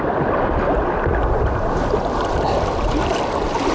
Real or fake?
real